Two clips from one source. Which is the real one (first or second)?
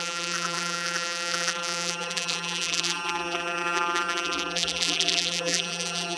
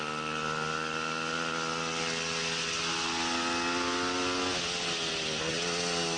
second